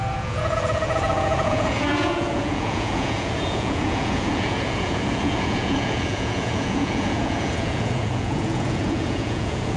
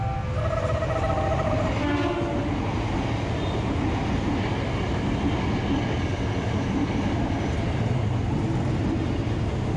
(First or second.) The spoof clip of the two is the first